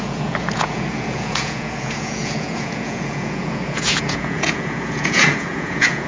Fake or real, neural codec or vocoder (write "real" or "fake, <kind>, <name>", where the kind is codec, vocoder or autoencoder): fake, vocoder, Vocos